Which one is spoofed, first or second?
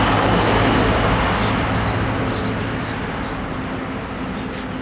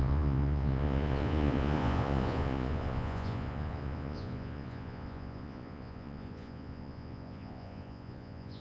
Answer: second